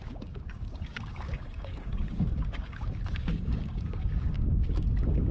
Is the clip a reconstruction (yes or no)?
yes